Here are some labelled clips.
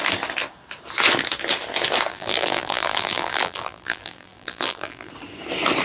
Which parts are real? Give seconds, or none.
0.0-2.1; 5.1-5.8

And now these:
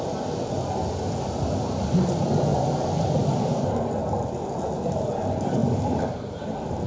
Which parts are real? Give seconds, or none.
0.0-5.6

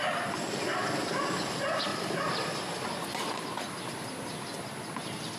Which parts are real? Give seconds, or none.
0.0-5.4

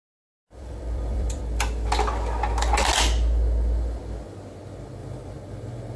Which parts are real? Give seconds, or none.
0.0-0.4; 1.4-5.0

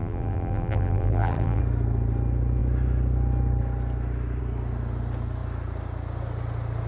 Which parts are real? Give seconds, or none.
1.6-6.9

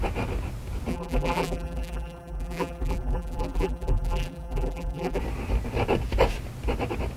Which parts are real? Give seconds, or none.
0.0-0.9; 5.2-7.2

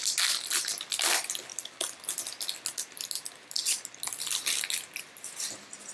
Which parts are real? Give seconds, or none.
0.0-5.9